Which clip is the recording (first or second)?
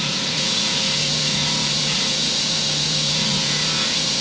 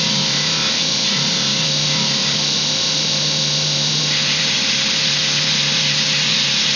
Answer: second